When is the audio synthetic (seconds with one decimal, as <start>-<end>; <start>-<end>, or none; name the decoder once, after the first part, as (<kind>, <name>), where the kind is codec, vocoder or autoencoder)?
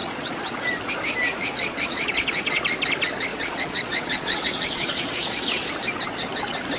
0.0-0.7 (vocoder, Vocos); 1.3-2.6; 3.3-5.7